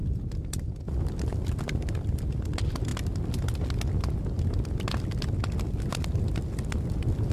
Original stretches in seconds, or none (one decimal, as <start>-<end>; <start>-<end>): 1.4-7.3